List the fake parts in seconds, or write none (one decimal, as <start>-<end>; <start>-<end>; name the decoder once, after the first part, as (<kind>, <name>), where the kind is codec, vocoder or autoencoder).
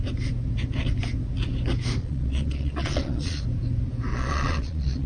2.0-3.4 (vocoder, Vocos); 4.1-5.1